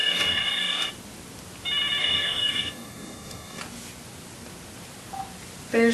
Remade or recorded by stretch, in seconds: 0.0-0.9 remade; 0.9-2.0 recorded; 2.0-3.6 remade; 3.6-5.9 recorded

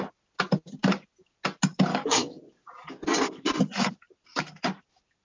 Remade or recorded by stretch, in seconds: 0.0-1.9 recorded; 1.9-2.4 remade; 2.4-5.2 recorded